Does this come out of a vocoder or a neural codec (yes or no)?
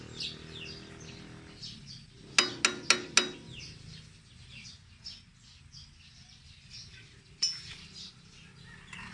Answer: no